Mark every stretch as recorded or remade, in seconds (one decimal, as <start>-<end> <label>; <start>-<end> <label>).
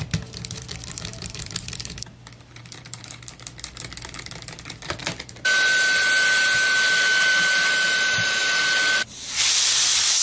0.0-10.2 remade